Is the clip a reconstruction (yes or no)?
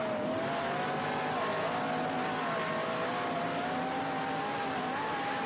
no